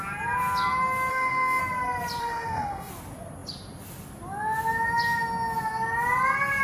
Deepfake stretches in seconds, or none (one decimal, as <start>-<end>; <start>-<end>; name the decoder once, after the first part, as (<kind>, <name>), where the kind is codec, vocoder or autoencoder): 1.1-1.6 (autoencoder, DAC-VAE); 2.2-2.9